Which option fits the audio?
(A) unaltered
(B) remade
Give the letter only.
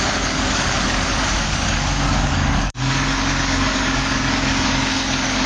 B